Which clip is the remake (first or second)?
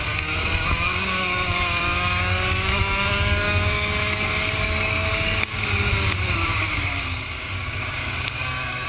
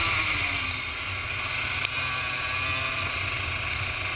first